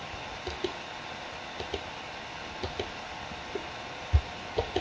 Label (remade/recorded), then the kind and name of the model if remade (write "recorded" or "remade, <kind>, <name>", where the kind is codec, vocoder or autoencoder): recorded